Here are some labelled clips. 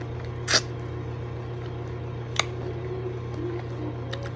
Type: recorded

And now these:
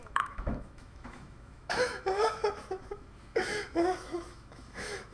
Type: remade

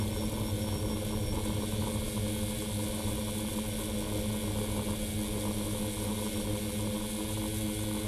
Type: recorded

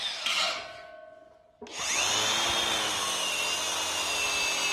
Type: recorded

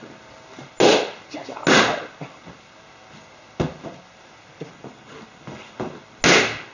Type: recorded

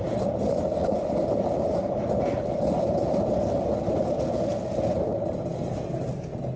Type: recorded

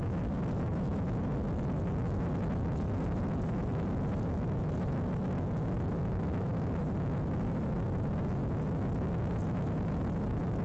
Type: remade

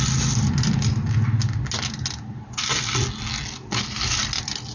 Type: recorded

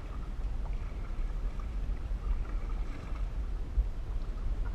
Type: recorded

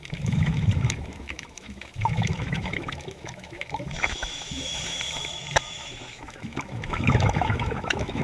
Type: remade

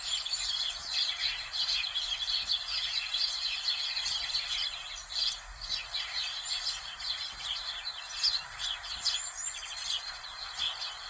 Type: recorded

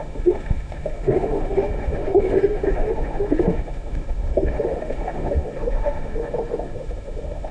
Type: remade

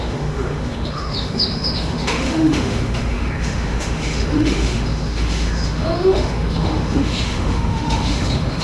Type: remade